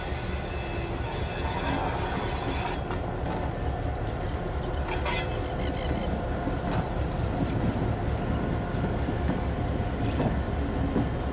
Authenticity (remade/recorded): recorded